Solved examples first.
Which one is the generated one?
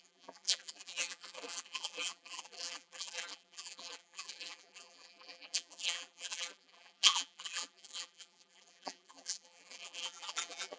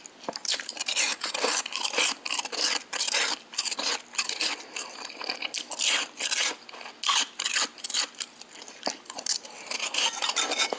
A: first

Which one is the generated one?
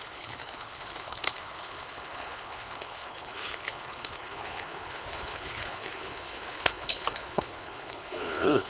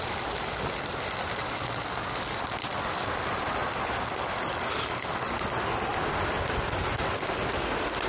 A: first